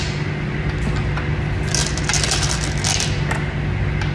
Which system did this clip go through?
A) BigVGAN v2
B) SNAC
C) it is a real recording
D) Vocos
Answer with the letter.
C